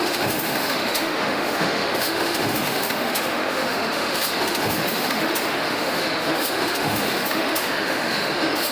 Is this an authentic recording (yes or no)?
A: no